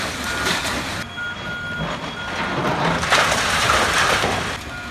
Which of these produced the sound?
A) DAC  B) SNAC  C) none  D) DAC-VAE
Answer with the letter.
C